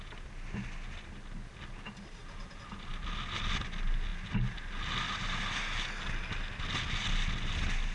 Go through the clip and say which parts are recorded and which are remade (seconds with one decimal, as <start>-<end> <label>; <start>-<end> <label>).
0.0-7.9 recorded